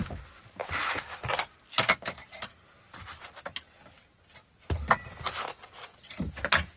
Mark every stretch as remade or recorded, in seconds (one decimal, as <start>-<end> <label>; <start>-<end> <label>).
0.0-6.8 recorded